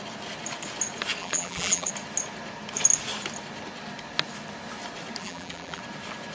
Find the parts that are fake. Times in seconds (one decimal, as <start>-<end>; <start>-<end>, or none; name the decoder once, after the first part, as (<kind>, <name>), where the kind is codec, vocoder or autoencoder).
1.2-1.9 (vocoder, BigVGAN v2); 5.2-5.8